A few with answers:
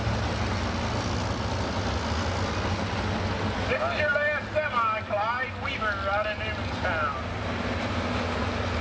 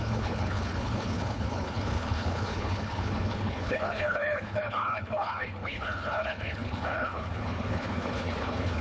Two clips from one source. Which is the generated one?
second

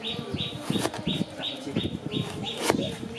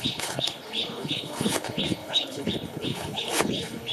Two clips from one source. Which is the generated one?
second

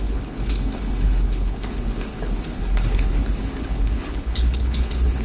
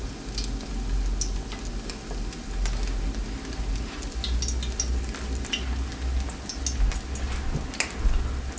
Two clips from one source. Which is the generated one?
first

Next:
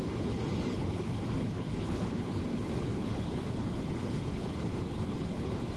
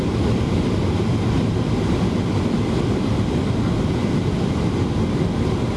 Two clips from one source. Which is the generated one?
first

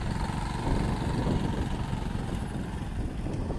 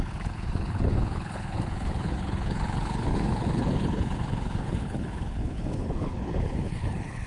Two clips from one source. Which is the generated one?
second